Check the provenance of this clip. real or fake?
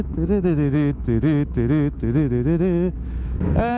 fake